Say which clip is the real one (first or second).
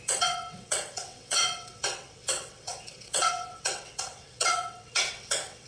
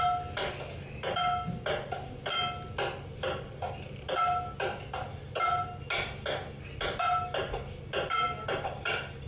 second